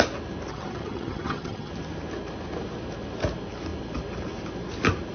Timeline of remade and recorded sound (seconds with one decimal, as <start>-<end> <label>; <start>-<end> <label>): 0.0-0.5 recorded; 0.5-1.7 remade; 1.7-5.1 recorded

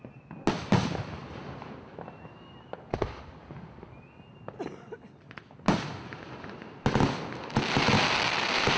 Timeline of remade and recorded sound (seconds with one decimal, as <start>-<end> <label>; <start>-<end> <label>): 0.0-8.8 recorded